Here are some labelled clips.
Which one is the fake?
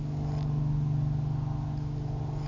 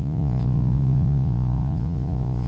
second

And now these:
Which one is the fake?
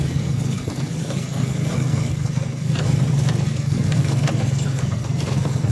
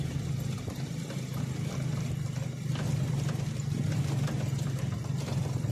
first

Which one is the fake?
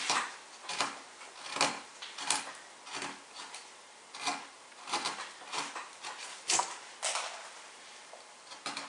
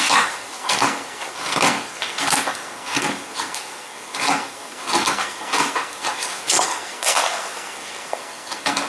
second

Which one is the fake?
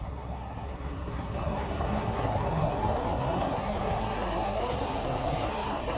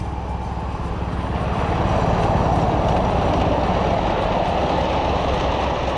first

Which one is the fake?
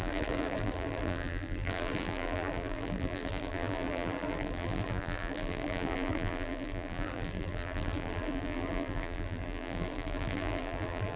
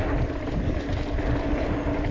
first